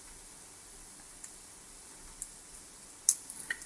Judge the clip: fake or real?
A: real